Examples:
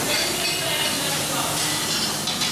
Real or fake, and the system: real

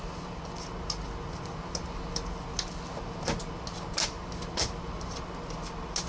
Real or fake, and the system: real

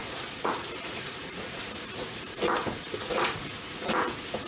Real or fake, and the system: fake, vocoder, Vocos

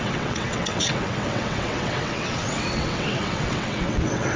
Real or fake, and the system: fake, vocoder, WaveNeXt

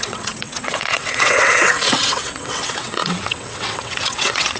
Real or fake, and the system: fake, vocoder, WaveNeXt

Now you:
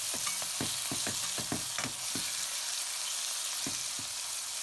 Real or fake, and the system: real